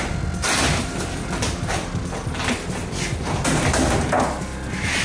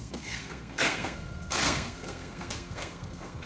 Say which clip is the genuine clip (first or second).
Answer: first